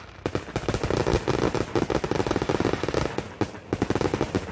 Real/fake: real